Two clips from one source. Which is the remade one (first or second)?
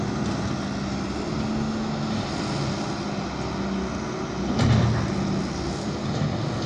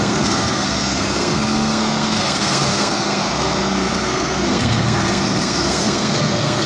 second